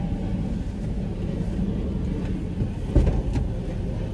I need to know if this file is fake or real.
real